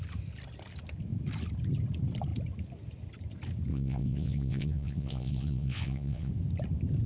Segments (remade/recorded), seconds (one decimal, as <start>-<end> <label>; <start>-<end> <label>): 0.0-3.7 recorded; 3.7-6.3 remade; 6.3-7.1 recorded